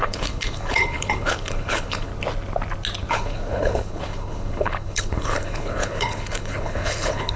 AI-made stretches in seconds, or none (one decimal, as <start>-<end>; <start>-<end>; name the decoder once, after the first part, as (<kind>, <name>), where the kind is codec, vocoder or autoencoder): 0.0-2.1 (codec, HILCodec); 3.1-7.4